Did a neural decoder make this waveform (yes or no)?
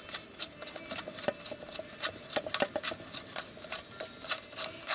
no